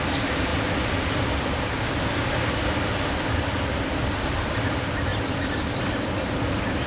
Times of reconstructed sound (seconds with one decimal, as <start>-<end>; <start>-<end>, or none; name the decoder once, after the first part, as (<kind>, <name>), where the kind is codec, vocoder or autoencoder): none